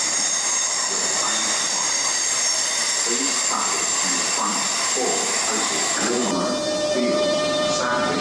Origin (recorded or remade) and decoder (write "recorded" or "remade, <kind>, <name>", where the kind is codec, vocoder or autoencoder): remade, vocoder, BigVGAN v2